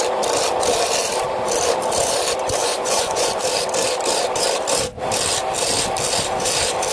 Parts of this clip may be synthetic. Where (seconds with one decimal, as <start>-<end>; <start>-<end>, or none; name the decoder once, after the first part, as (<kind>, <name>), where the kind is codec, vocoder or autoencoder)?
2.6-3.4 (vocoder, Vocos)